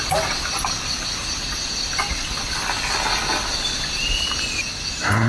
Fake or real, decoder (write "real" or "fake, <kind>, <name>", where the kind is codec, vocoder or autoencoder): real